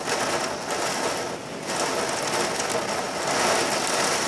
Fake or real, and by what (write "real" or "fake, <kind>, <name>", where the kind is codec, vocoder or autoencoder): real